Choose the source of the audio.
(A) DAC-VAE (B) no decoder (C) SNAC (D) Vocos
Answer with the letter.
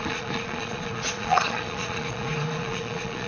D